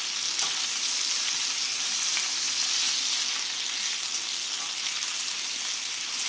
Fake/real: real